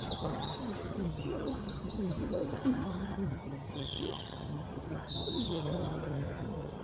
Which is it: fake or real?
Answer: fake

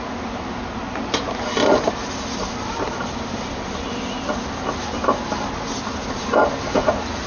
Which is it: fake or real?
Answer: real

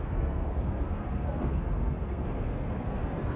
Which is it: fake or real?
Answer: fake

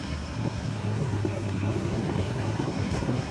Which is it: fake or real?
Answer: fake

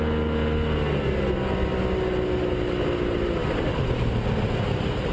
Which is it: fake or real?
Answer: real